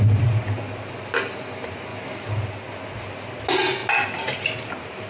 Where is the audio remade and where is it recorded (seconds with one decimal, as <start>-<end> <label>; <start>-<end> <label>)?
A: 0.0-1.9 recorded; 1.9-2.8 remade; 2.8-5.1 recorded